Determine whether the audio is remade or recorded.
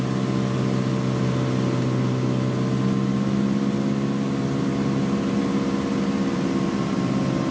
recorded